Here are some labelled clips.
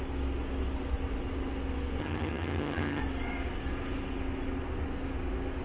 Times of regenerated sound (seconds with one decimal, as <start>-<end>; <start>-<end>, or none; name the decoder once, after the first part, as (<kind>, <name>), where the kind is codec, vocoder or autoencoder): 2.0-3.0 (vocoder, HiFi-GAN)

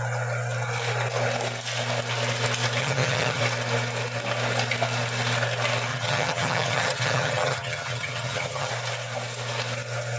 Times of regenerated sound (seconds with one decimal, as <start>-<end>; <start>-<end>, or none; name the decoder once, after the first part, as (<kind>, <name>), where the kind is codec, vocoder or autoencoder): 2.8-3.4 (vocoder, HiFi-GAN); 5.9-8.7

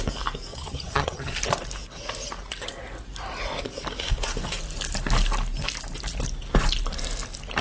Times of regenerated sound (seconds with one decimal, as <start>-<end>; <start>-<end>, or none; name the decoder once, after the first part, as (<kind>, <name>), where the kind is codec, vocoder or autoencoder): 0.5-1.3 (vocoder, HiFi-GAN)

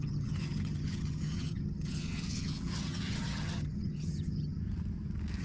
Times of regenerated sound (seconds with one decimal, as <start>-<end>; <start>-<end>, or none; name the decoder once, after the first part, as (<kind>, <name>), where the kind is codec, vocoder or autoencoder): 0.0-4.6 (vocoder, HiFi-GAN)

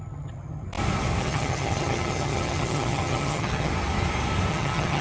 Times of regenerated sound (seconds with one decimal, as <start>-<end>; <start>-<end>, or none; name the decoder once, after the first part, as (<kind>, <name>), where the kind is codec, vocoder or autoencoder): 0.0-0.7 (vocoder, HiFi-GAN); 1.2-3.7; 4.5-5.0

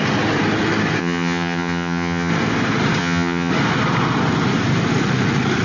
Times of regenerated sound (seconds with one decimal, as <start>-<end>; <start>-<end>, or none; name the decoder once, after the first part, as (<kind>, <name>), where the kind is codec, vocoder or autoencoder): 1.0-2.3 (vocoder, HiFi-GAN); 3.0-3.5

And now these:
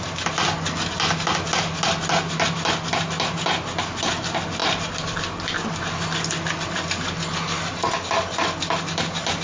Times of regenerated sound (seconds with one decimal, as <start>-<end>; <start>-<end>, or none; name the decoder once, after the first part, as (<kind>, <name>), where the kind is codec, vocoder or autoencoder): none